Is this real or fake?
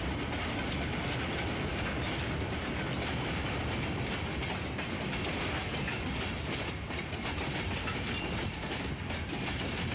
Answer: real